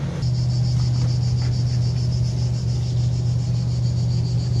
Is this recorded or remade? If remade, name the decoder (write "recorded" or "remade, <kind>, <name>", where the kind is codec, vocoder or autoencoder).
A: recorded